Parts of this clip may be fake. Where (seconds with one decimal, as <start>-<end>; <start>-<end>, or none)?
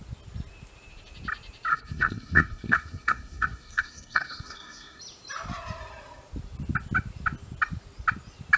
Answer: 1.7-5.0